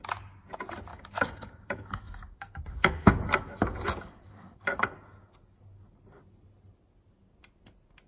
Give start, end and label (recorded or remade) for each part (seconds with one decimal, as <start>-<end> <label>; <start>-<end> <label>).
0.0-0.9 recorded; 0.9-4.8 remade; 4.8-8.1 recorded